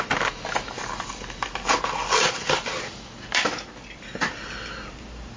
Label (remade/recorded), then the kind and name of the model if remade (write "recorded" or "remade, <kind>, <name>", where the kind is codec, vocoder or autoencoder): recorded